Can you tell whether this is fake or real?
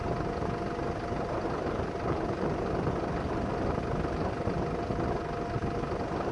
real